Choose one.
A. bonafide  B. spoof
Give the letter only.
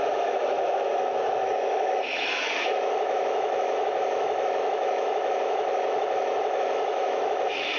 B